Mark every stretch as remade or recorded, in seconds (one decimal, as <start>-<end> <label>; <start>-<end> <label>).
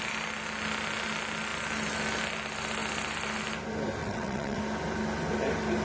0.0-4.0 recorded; 4.0-4.6 remade; 4.6-5.8 recorded